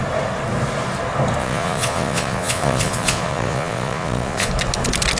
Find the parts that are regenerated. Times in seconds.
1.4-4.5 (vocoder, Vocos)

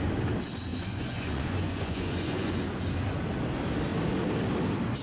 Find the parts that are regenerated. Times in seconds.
0.7-2.6 (vocoder, Vocos)